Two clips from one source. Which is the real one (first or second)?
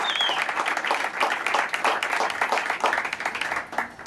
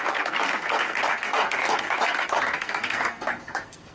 first